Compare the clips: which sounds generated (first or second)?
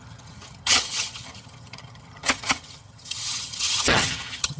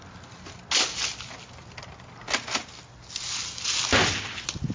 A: first